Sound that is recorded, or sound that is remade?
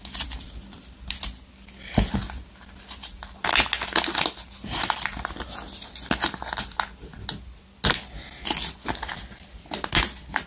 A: recorded